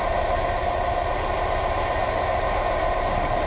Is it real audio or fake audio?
real